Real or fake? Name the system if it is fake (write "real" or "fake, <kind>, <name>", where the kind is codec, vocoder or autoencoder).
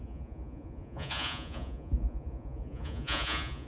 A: fake, vocoder, Vocos